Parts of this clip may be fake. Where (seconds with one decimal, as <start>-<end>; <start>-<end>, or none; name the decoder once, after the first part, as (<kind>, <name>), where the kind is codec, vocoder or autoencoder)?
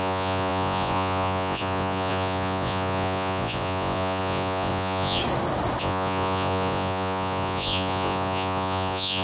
0.0-5.2 (vocoder, Vocos); 5.8-9.2